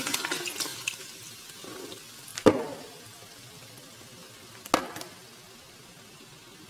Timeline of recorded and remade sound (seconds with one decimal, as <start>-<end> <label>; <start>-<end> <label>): 0.0-0.7 recorded; 0.7-1.2 remade; 1.2-2.3 recorded; 2.3-4.5 remade; 4.5-6.7 recorded

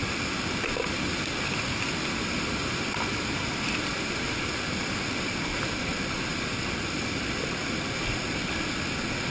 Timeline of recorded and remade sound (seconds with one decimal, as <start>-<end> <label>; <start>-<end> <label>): 0.0-2.7 recorded; 2.7-5.9 remade; 5.9-6.6 recorded; 6.6-7.6 remade; 7.6-8.6 recorded; 8.6-9.3 remade